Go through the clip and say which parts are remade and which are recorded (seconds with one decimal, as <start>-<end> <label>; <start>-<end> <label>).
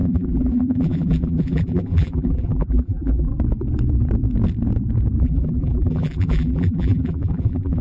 0.0-3.3 remade; 3.3-5.2 recorded; 5.2-7.8 remade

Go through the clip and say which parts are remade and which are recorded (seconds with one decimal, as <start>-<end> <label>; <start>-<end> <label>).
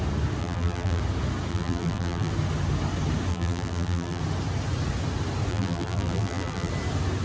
0.0-0.4 recorded; 0.4-1.0 remade; 1.0-1.5 recorded; 1.5-2.3 remade; 2.3-3.3 recorded; 3.3-4.2 remade; 4.2-5.5 recorded; 5.5-6.7 remade; 6.7-7.2 recorded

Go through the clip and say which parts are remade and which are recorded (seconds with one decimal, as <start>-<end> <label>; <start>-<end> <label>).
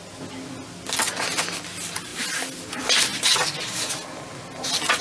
0.0-5.0 recorded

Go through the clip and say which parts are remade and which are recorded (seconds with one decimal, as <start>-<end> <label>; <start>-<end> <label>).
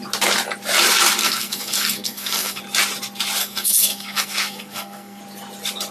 0.0-1.2 recorded; 1.2-2.6 remade; 2.6-3.4 recorded; 3.4-5.2 remade; 5.2-5.9 recorded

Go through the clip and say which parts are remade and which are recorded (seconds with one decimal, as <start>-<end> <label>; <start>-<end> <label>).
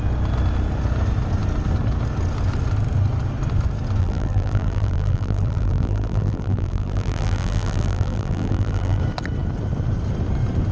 0.0-4.0 recorded; 4.0-9.0 remade; 9.0-10.7 recorded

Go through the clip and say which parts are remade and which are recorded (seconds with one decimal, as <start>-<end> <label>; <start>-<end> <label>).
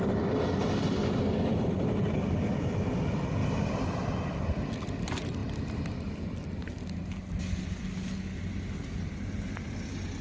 0.0-1.0 recorded; 1.0-2.7 remade; 2.7-3.4 recorded; 3.4-4.1 remade; 4.1-10.2 recorded